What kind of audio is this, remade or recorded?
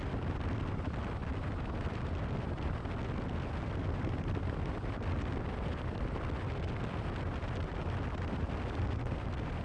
recorded